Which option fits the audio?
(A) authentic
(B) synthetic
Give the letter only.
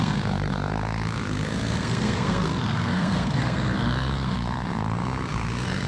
B